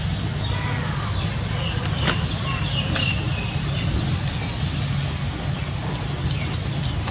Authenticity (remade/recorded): recorded